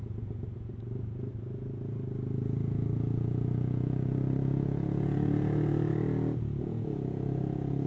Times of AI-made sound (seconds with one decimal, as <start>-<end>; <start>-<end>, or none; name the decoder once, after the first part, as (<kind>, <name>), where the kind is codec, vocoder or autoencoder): 0.0-5.9 (vocoder, Vocos); 6.6-7.9